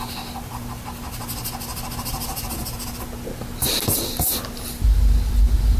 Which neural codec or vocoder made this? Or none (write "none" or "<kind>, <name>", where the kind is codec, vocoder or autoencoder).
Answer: none